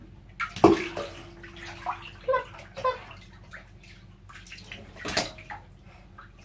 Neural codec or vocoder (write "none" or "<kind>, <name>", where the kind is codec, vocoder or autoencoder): none